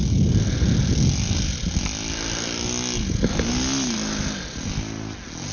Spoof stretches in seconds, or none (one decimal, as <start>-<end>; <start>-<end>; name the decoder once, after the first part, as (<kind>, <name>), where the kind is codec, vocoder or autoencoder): none